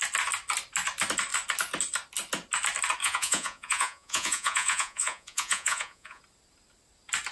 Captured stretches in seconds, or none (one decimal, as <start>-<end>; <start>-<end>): 0.0-3.0; 6.2-7.3